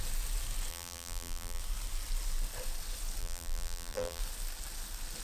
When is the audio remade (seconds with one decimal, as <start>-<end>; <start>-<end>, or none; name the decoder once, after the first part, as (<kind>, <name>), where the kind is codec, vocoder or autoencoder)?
0.7-1.6 (vocoder, BigVGAN v2); 3.2-4.2